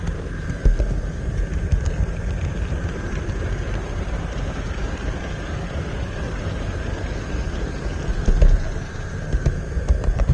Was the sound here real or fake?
fake